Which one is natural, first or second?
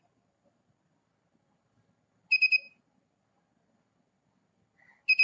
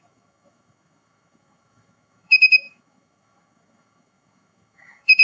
first